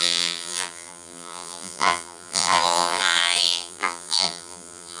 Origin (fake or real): fake